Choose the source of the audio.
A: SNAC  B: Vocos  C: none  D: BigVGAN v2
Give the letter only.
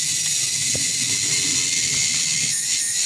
C